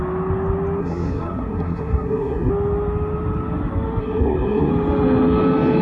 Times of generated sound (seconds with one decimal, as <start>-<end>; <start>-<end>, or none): 0.8-2.5; 4.0-4.7

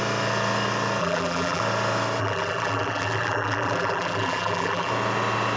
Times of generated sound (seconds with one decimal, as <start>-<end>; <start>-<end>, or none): 1.0-1.6; 2.2-4.9